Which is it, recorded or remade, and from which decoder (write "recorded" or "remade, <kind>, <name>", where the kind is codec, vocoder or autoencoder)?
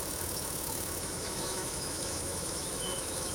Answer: remade, autoencoder, DAC-VAE